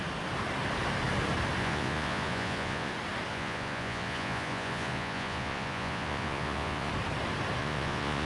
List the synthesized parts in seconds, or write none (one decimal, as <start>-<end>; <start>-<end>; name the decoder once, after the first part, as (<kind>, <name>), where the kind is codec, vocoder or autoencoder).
1.6-2.9 (vocoder, Vocos); 3.3-6.9; 7.6-8.3